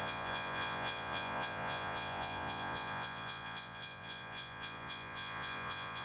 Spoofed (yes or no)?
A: yes